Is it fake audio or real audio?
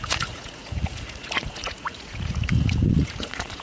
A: fake